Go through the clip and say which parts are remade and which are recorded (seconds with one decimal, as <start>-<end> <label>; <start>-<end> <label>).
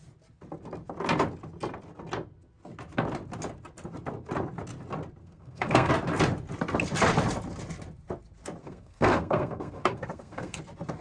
0.0-5.2 recorded; 5.2-5.9 remade; 5.9-8.6 recorded; 8.6-10.6 remade; 10.6-11.0 recorded